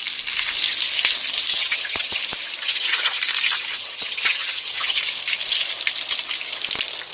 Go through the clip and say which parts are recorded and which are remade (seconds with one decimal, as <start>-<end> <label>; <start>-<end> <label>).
0.0-1.5 recorded; 1.5-2.2 remade; 2.2-2.6 recorded; 2.6-3.2 remade; 3.2-3.8 recorded; 3.8-5.0 remade; 5.0-7.1 recorded